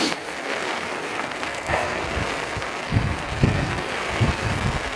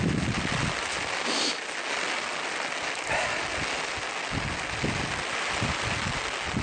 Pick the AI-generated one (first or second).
first